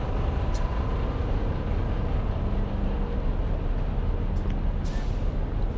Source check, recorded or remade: recorded